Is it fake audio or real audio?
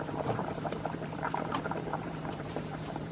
fake